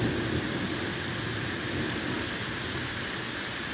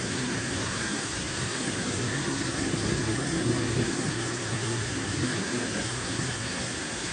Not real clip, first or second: second